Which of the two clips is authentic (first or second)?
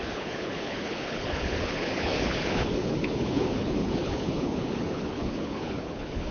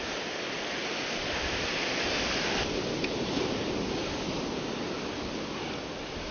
second